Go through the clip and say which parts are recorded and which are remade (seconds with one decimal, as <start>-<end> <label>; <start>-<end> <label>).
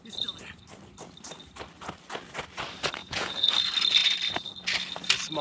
0.0-3.0 recorded; 3.0-3.5 remade; 3.5-5.4 recorded